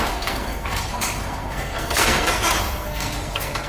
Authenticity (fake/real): fake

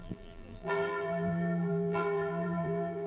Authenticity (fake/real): fake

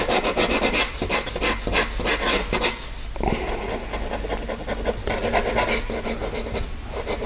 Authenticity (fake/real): real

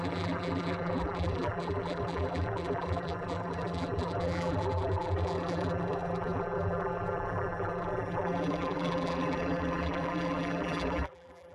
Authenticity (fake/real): fake